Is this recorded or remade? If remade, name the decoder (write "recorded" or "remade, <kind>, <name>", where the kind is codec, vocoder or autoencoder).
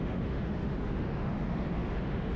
remade, autoencoder, DAC-VAE